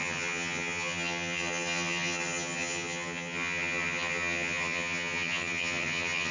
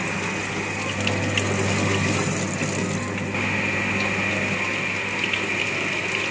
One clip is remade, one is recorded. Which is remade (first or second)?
first